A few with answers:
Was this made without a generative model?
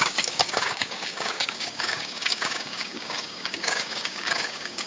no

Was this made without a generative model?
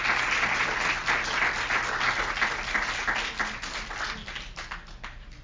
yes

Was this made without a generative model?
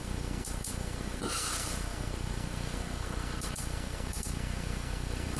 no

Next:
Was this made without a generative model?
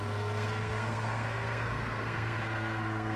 no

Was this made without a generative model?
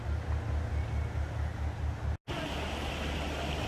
yes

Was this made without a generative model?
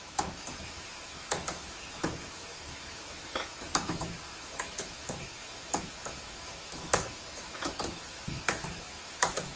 no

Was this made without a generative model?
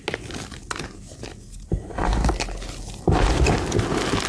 yes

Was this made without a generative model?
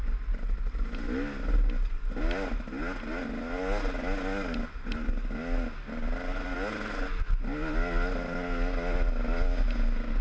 yes